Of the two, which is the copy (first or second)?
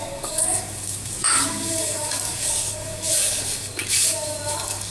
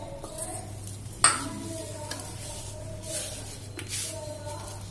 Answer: first